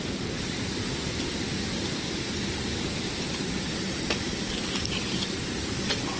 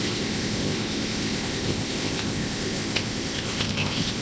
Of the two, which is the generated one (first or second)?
second